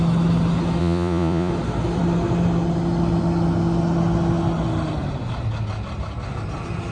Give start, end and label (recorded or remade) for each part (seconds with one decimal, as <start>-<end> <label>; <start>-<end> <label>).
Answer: 0.0-0.8 recorded; 0.8-1.5 remade; 1.5-6.9 recorded